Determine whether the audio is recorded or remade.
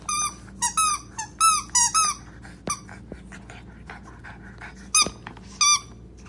recorded